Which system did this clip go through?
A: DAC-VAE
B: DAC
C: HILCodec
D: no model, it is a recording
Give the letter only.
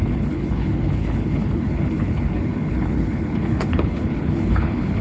C